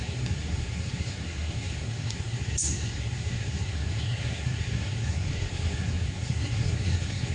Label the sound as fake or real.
fake